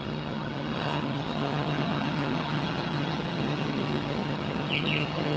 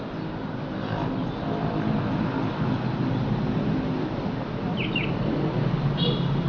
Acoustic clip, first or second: second